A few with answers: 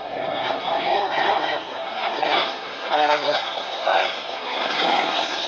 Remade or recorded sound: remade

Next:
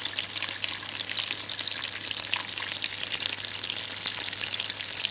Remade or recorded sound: recorded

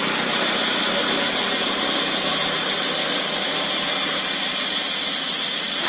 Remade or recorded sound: recorded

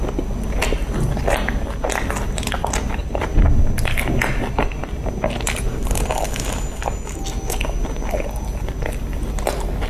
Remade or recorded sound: recorded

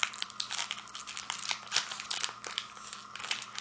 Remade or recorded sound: recorded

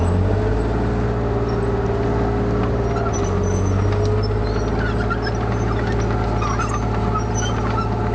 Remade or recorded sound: recorded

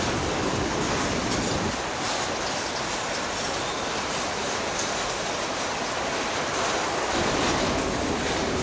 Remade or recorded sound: recorded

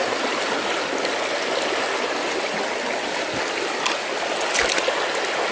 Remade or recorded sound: recorded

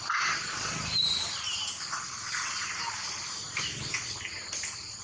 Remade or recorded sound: recorded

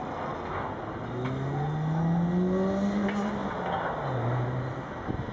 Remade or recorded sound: recorded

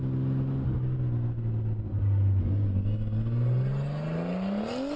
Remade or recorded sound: recorded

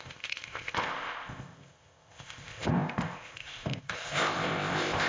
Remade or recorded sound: remade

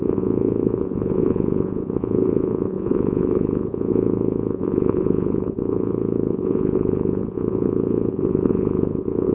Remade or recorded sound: remade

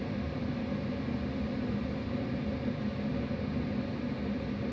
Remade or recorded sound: recorded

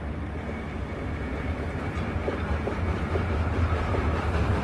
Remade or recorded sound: recorded